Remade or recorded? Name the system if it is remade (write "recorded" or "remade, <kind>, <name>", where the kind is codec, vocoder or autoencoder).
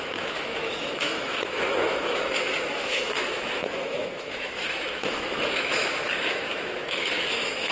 remade, autoencoder, DAC-VAE